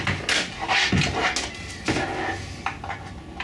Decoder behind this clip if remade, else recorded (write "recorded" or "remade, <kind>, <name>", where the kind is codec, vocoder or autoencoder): recorded